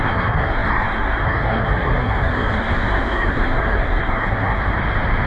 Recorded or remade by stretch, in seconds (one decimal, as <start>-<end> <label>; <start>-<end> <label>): 0.0-4.6 remade; 4.6-5.3 recorded